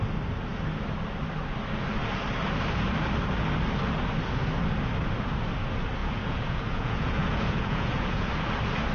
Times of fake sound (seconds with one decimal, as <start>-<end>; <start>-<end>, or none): 6.0-8.3

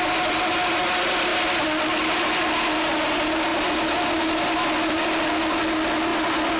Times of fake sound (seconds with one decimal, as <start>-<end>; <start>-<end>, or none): none

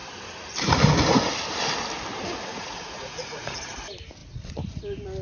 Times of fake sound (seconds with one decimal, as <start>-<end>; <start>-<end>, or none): 2.5-3.6; 4.2-4.8

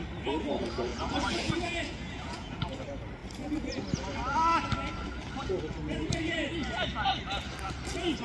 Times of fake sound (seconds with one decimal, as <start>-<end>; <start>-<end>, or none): 0.9-2.8

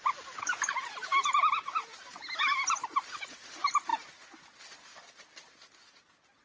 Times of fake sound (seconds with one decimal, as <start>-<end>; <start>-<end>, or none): none

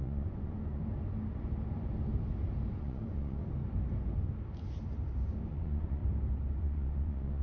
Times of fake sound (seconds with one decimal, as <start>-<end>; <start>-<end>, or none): 0.0-0.8; 2.8-3.4; 5.5-6.0; 6.6-7.4

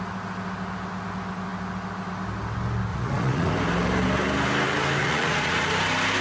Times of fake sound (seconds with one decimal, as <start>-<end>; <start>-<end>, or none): 2.9-3.5; 5.0-5.7

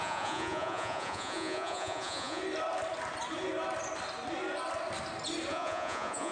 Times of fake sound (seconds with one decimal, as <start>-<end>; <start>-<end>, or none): 0.0-2.4; 5.5-6.3